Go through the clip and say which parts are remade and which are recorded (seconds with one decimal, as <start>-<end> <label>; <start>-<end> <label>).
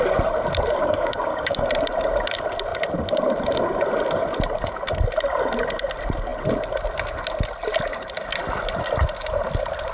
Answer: 0.0-0.8 recorded; 0.8-1.7 remade; 1.7-9.9 recorded